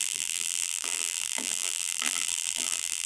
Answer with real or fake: fake